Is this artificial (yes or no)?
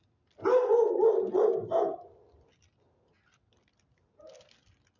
no